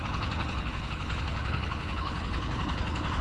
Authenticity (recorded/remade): remade